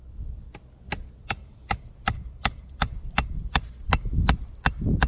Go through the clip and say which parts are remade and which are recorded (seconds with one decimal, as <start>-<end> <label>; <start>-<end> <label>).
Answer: 0.0-1.4 recorded; 1.4-3.0 remade; 3.0-3.4 recorded; 3.4-4.1 remade; 4.1-5.1 recorded